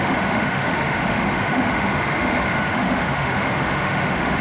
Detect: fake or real fake